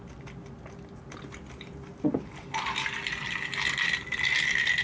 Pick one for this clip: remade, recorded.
recorded